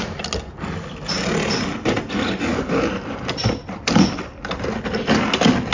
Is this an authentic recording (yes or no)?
yes